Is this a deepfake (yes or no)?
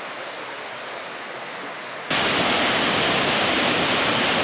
no